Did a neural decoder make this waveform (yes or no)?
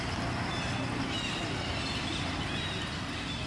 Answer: no